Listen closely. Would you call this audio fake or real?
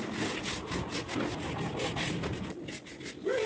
real